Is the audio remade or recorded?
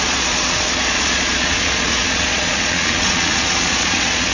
remade